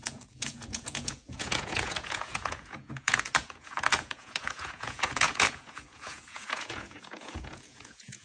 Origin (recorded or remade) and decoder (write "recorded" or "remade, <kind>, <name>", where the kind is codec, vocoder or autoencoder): remade, vocoder, Vocos